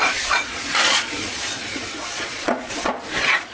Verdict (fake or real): fake